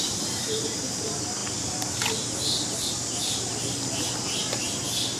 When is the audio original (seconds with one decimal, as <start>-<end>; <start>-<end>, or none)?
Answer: 0.0-5.2